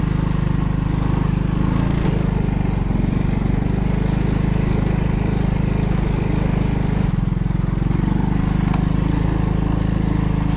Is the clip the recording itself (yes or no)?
yes